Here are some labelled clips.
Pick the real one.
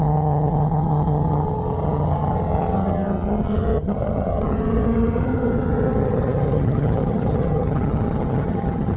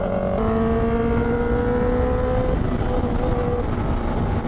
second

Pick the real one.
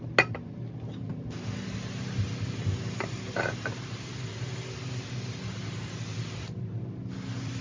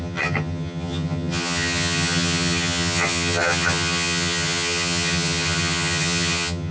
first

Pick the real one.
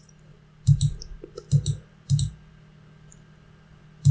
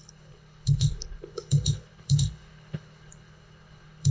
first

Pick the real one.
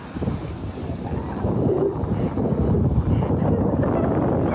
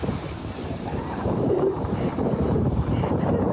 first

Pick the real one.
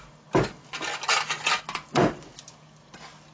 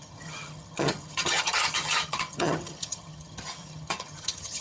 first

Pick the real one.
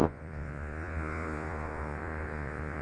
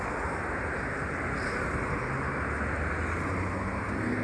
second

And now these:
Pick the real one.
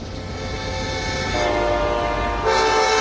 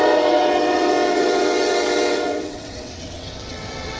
first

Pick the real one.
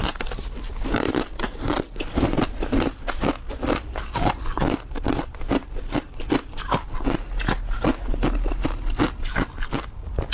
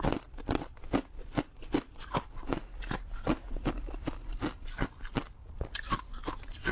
first